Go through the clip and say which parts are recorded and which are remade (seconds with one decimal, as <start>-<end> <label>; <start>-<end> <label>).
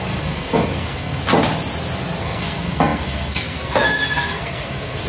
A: 0.0-1.2 remade; 1.2-2.2 recorded; 2.2-5.1 remade